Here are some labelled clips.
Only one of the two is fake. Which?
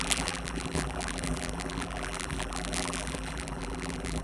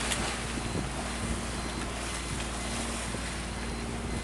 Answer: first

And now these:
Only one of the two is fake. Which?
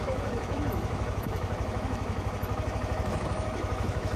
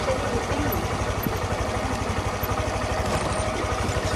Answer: first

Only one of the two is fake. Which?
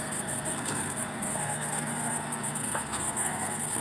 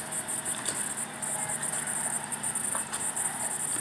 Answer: first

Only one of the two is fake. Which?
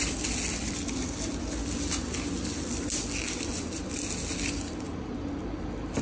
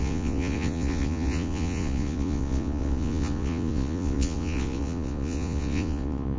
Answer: second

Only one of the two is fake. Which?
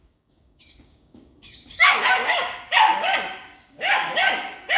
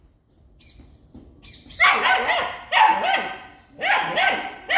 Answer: first